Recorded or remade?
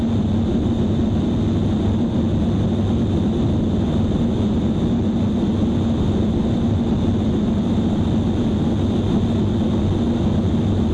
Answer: recorded